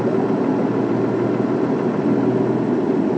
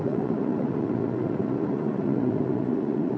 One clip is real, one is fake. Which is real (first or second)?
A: first